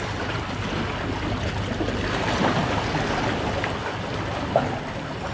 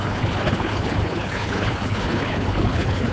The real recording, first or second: first